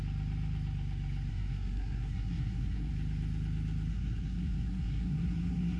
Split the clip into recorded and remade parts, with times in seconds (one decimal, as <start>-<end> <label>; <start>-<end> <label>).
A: 0.0-1.3 recorded; 1.3-2.9 remade; 2.9-3.9 recorded; 3.9-5.8 remade